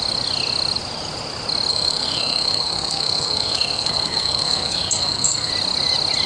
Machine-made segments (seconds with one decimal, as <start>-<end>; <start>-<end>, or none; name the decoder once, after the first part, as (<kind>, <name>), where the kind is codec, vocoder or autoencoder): 1.7-5.5 (codec, SNAC)